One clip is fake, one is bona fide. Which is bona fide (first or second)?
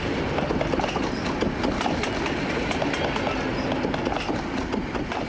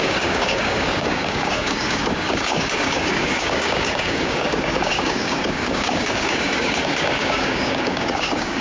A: first